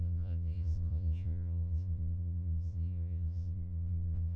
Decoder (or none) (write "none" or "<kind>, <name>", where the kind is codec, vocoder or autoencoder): vocoder, Vocos